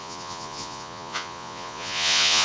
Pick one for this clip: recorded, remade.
remade